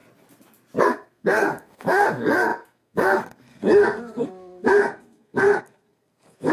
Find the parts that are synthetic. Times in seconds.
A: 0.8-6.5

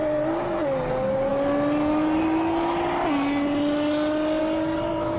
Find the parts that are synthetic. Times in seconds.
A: none

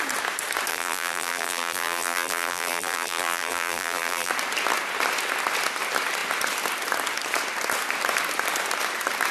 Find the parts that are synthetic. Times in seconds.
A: 0.7-4.3

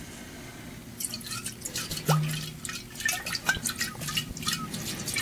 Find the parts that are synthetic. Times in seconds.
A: none